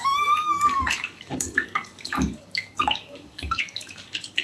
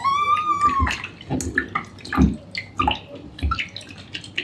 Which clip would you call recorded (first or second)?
second